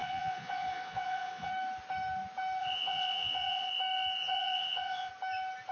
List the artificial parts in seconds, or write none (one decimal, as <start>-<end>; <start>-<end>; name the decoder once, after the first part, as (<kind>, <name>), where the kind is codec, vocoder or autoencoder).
0.0-1.5 (vocoder, Vocos); 2.6-3.7; 4.2-5.1